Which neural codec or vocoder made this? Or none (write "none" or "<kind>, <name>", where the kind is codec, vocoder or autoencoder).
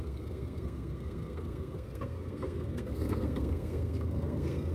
codec, SNAC